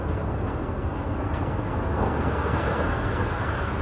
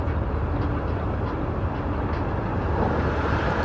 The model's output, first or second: first